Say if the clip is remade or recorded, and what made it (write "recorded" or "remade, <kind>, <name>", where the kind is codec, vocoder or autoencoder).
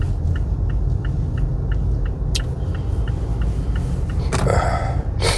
recorded